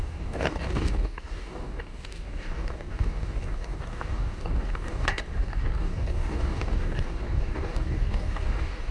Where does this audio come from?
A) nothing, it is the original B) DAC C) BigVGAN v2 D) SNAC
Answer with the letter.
B